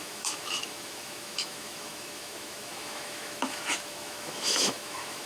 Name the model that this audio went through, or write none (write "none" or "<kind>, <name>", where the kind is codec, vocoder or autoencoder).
autoencoder, DAC-VAE